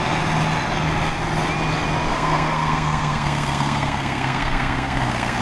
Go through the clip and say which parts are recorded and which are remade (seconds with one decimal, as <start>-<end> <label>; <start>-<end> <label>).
0.0-2.1 recorded; 2.1-5.4 remade